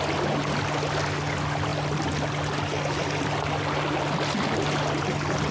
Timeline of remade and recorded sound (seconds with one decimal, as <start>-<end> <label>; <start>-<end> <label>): 0.0-5.5 recorded